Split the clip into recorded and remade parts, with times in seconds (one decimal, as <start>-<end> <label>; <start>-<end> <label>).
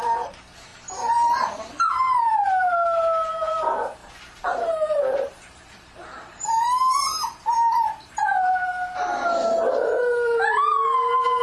0.0-4.0 recorded; 4.0-8.2 remade; 8.2-11.4 recorded